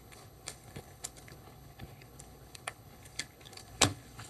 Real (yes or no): no